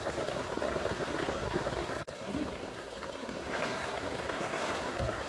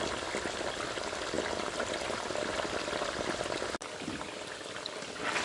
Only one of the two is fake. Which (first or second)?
first